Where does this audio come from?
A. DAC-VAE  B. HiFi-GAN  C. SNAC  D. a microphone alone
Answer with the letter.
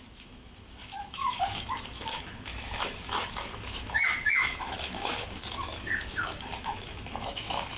A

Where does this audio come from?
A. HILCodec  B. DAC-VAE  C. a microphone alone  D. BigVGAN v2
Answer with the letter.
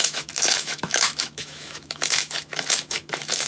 B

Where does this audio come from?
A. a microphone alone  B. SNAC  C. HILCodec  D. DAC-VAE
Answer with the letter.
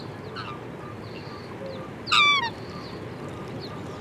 A